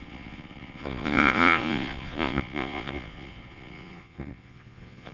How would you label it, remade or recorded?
remade